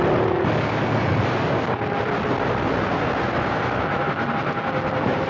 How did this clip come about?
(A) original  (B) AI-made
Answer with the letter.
A